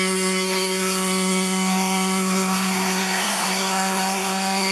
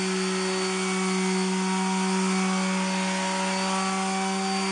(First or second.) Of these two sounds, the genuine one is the second